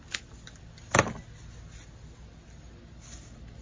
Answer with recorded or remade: recorded